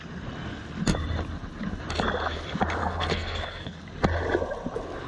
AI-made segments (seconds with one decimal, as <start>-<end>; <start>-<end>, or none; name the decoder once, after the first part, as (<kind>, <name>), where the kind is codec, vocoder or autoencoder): 2.8-3.8 (codec, SNAC)

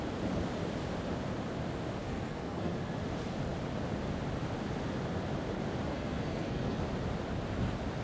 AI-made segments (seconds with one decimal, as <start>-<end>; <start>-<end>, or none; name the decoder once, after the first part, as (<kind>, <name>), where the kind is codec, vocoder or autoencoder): 2.0-2.7 (codec, SNAC); 5.9-6.8